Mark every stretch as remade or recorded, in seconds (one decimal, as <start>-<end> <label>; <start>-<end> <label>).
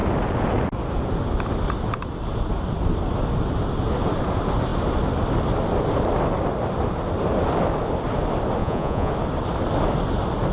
0.0-8.6 recorded; 8.6-9.1 remade; 9.1-10.5 recorded